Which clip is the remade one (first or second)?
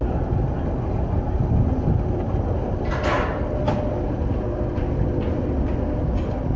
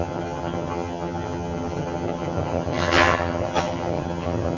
second